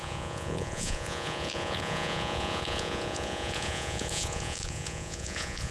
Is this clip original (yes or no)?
no